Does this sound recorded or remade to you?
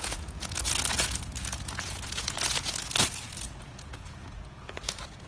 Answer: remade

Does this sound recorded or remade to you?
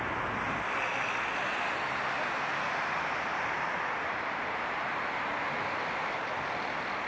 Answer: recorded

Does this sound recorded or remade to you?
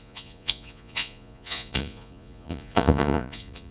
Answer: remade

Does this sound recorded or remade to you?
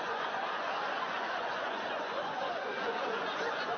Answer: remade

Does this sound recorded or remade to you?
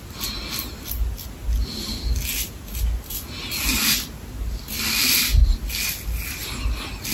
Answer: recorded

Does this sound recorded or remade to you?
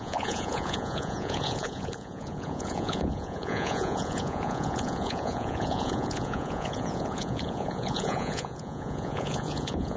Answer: remade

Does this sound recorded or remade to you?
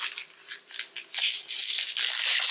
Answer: recorded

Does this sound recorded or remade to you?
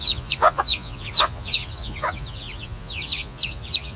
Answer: remade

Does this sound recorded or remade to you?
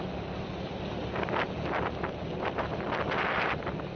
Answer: recorded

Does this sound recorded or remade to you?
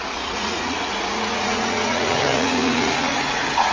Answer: remade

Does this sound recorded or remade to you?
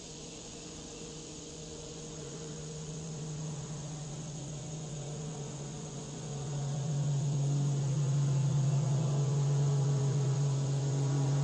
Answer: remade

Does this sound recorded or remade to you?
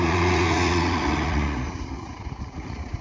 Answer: remade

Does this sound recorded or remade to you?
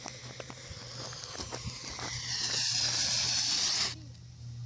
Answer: recorded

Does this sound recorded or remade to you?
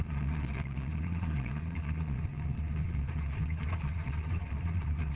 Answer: remade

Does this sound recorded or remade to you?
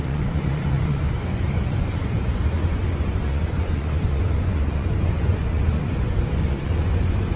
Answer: remade